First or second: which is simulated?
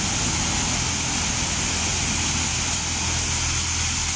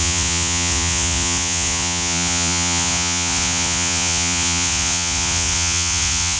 second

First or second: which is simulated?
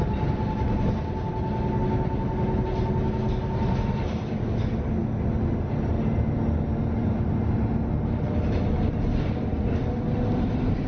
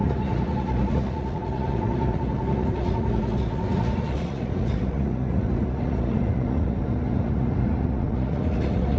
second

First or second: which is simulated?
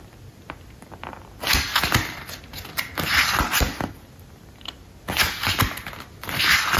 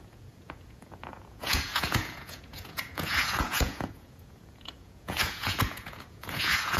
second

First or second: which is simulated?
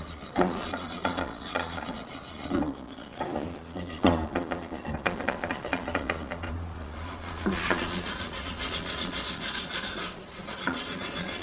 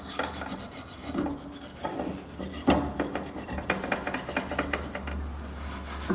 first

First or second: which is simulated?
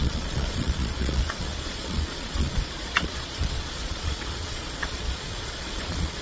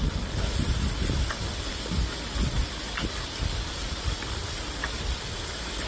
first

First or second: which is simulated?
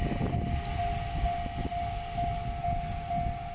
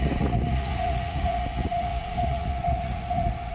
second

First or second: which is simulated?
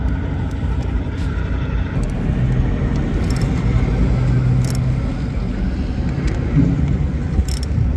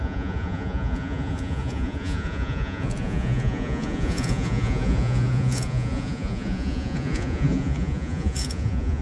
second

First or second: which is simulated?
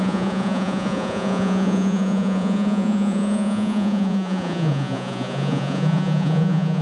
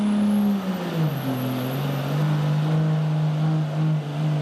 first